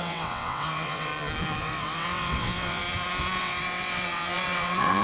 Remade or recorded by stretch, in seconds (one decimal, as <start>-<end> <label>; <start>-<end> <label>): 0.0-1.1 remade; 1.1-1.6 recorded; 1.6-2.8 remade; 2.8-3.4 recorded; 3.4-5.0 remade

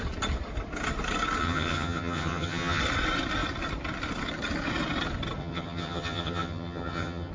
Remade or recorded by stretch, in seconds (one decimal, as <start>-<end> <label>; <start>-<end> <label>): 0.0-1.4 recorded; 1.4-2.8 remade; 2.8-5.4 recorded; 5.4-7.3 remade

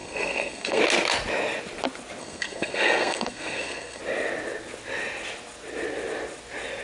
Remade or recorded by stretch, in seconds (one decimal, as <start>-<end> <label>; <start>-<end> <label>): 0.0-0.8 remade; 0.8-2.2 recorded; 2.2-4.0 remade; 4.0-6.8 recorded